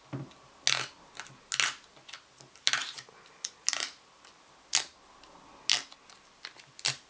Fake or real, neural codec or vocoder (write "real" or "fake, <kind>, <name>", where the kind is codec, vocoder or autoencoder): real